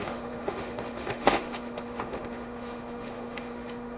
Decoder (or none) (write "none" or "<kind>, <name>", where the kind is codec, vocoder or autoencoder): autoencoder, DAC-VAE